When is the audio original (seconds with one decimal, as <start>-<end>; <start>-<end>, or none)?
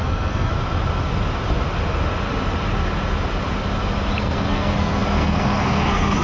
0.5-4.2